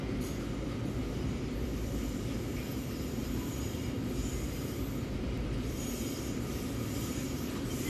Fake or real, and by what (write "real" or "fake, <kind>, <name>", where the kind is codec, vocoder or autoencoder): fake, vocoder, BigVGAN v2